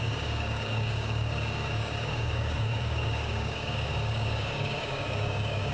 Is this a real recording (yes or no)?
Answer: no